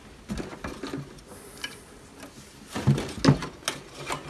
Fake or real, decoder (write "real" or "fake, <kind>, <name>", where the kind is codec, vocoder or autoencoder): real